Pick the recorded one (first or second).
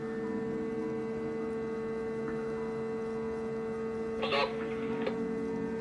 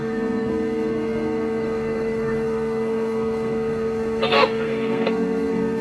first